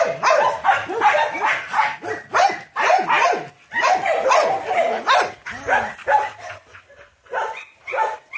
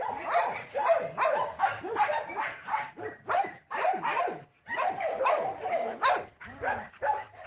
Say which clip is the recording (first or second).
first